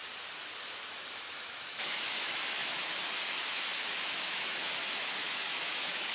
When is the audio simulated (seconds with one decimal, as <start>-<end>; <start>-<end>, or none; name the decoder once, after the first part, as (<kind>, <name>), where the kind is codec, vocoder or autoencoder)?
1.1-6.1 (autoencoder, DAC-VAE)